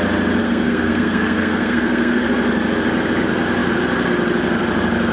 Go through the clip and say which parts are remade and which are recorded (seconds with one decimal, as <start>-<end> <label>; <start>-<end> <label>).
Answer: 0.0-0.4 recorded; 0.4-2.3 remade; 2.3-5.1 recorded